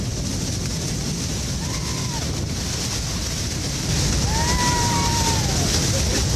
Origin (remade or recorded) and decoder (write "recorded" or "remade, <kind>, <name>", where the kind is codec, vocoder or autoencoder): recorded